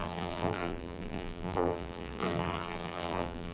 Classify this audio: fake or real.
fake